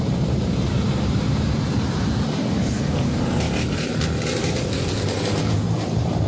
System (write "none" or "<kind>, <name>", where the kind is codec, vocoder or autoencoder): vocoder, BigVGAN v2